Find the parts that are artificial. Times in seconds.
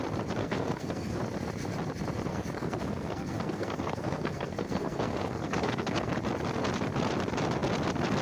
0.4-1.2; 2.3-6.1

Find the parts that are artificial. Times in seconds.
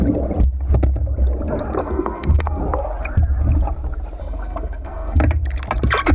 1.8-2.6; 4.2-5.2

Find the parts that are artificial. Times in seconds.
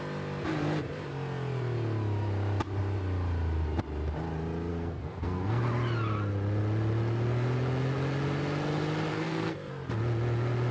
4.7-5.6; 9.1-9.7